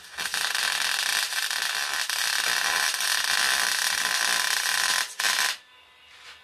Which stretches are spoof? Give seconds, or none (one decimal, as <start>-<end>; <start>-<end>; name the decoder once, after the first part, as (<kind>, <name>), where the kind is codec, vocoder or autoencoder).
none